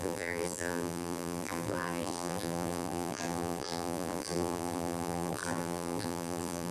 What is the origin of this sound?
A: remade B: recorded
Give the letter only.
A